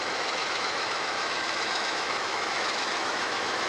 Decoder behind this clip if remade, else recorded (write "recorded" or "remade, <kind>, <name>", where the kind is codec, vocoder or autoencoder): remade, autoencoder, DAC-VAE